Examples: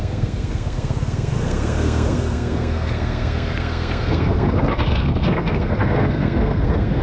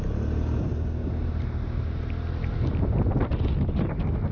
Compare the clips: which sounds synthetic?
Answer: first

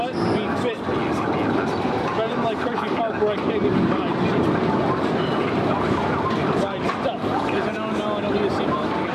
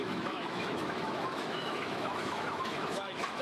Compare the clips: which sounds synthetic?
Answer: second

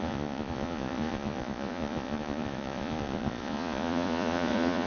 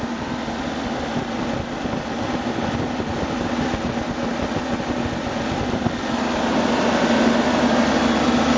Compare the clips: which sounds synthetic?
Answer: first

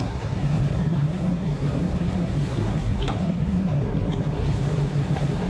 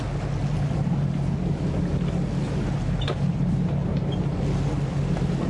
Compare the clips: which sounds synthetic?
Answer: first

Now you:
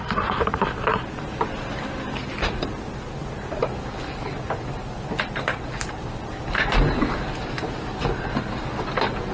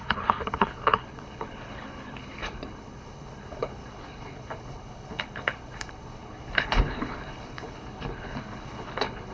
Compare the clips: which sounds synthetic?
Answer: second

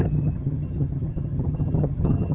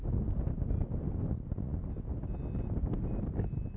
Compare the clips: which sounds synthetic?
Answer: first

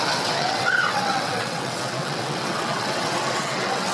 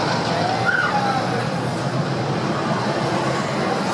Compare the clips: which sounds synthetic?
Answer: first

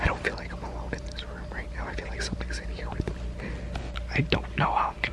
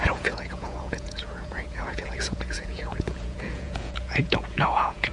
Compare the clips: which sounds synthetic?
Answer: second